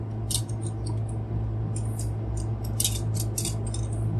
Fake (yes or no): no